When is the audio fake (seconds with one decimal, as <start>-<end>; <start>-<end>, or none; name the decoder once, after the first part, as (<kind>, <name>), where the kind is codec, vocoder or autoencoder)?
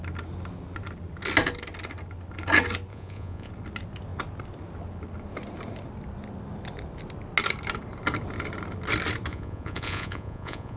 2.9-3.5 (vocoder, Vocos); 9.3-10.8